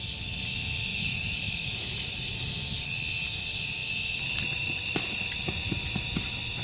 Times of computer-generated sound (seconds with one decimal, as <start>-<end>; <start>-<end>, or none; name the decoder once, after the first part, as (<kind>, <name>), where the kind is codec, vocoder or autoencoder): 0.9-2.3 (vocoder, Vocos)